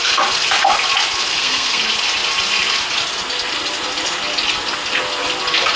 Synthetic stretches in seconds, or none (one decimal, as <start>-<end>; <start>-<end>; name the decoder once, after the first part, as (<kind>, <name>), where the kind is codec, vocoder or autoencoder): 1.3-1.8 (codec, SNAC)